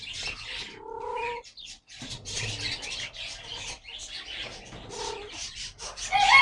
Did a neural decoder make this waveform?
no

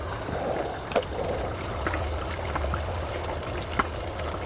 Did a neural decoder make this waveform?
yes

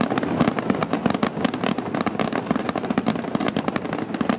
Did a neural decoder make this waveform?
no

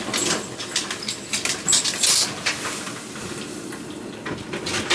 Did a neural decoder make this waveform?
no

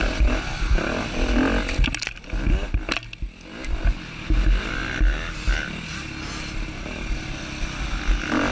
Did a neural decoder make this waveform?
no